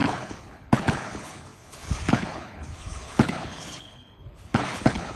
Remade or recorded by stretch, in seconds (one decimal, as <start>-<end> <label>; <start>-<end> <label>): 0.0-5.2 remade